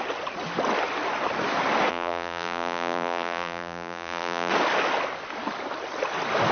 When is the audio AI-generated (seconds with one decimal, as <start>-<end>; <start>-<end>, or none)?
1.9-4.5